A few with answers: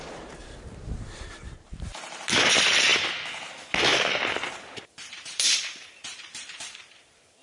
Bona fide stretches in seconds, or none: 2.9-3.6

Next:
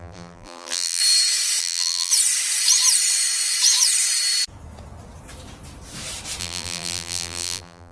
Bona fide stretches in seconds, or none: 1.0-1.6; 2.1-6.4